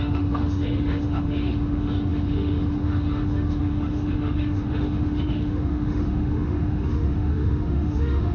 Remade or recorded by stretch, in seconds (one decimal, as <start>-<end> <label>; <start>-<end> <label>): 0.0-8.3 remade